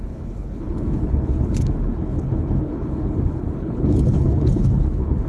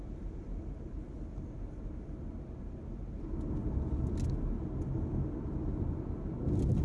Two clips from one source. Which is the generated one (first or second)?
first